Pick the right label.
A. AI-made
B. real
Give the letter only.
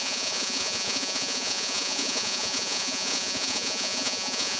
A